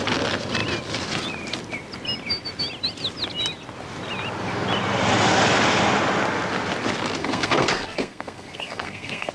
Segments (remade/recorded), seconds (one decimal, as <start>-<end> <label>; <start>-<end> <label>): 0.0-7.2 recorded; 7.2-9.3 remade